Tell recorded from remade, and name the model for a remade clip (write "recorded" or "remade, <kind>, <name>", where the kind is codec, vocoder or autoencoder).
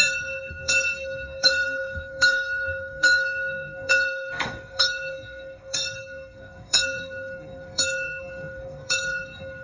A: remade, codec, SNAC